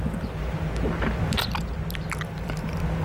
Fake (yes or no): no